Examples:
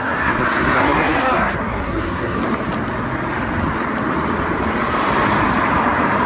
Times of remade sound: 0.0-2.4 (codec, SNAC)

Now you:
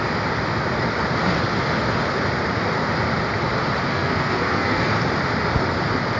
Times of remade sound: 3.9-4.8 (codec, SNAC)